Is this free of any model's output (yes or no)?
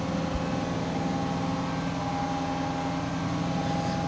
yes